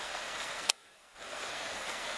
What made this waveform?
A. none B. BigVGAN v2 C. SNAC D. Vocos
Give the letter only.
C